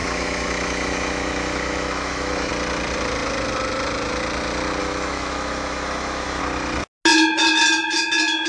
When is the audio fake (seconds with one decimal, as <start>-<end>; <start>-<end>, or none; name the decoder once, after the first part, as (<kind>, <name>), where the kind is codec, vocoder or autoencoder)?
0.0-2.5 (autoencoder, DAC-VAE); 4.8-6.4